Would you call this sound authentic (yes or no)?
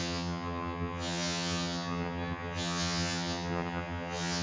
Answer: no